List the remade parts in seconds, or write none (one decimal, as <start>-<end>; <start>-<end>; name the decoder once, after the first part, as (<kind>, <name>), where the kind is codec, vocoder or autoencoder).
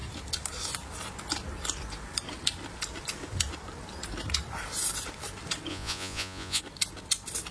5.7-6.6 (vocoder, Vocos)